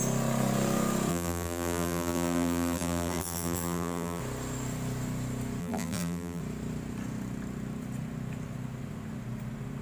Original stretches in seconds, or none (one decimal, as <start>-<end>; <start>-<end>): 0.0-1.1; 4.2-5.6; 6.4-9.8